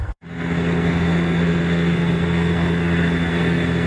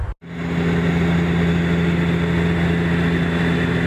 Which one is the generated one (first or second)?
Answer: first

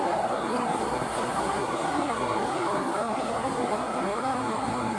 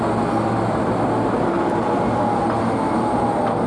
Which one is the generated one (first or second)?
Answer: first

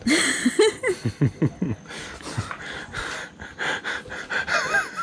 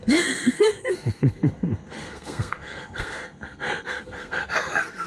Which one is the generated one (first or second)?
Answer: second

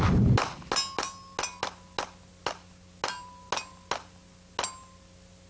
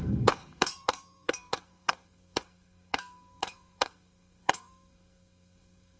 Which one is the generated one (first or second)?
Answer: second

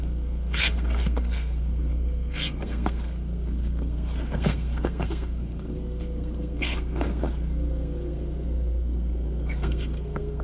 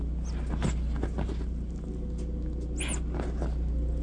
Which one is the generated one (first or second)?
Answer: first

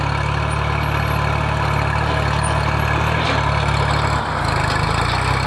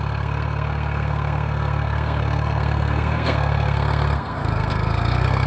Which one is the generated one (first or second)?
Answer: second